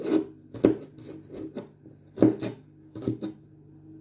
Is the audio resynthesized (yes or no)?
no